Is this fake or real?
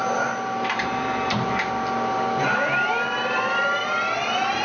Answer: real